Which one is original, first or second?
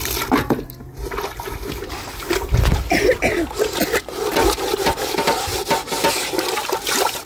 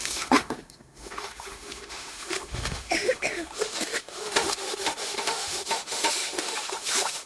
first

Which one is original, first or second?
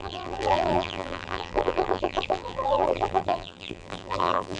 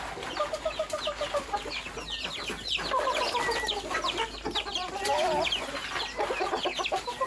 second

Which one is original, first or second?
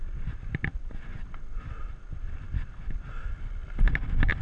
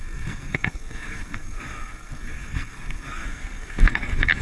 first